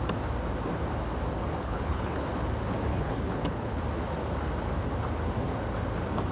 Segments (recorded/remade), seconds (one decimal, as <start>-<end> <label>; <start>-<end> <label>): 0.0-1.6 recorded; 1.6-2.3 remade; 2.3-2.9 recorded; 2.9-3.8 remade; 3.8-6.3 recorded